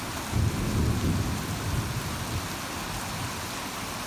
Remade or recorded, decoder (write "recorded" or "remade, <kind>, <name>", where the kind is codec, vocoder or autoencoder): recorded